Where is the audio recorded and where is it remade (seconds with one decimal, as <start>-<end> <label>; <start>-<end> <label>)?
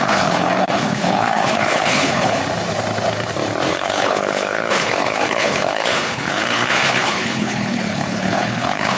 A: 0.0-2.4 remade; 2.4-3.7 recorded; 3.7-9.0 remade